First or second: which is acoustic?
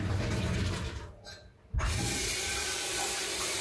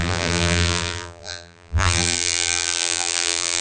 first